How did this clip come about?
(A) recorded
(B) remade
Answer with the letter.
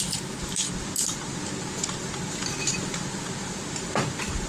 A